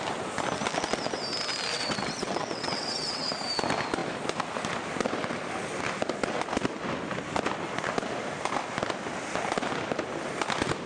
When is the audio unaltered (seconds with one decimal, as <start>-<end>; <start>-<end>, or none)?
0.0-1.7; 3.3-10.9